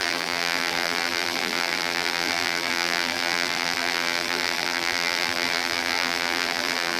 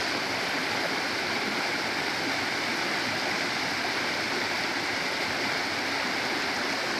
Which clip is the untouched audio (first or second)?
second